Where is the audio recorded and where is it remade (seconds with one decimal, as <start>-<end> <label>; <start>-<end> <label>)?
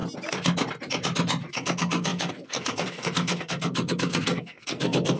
0.0-1.5 recorded; 1.5-5.2 remade